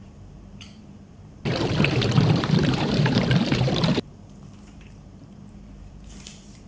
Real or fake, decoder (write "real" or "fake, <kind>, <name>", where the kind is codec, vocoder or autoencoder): fake, vocoder, BigVGAN v2